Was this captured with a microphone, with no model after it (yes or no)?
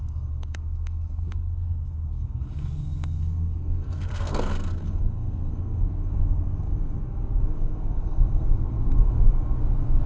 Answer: no